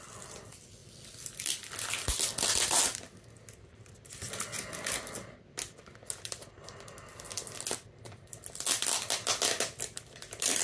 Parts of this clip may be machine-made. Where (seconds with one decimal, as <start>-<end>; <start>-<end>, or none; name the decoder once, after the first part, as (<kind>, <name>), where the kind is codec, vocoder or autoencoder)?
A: none